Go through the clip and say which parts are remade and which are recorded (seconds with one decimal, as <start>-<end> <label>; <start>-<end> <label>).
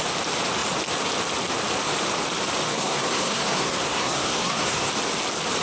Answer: 0.0-2.7 recorded; 2.7-4.9 remade; 4.9-5.6 recorded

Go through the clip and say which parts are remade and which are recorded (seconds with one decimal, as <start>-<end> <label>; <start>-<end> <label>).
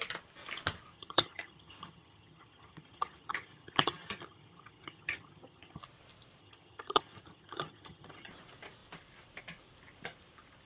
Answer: 0.0-0.9 recorded; 0.9-5.8 remade; 5.8-6.4 recorded; 6.4-8.3 remade; 8.3-10.7 recorded